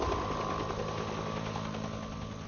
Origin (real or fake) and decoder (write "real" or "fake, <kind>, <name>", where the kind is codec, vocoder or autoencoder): real